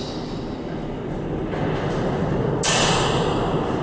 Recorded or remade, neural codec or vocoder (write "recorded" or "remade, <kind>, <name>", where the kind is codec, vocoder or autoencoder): recorded